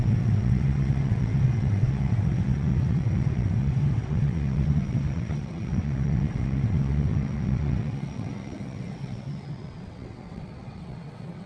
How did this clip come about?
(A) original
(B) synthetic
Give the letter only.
B